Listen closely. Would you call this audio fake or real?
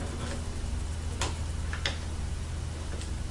real